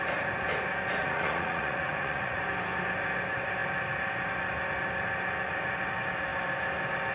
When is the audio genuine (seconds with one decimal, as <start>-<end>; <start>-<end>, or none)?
0.0-1.0; 2.4-7.1